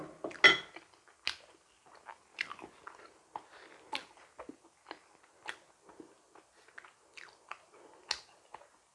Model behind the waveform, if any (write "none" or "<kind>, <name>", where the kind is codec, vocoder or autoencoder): none